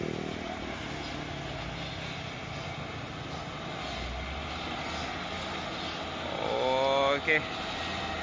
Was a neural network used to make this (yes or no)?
no